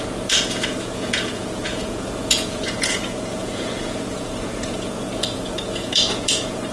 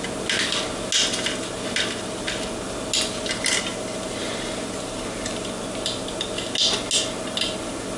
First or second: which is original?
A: second